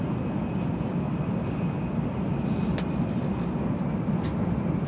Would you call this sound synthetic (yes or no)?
no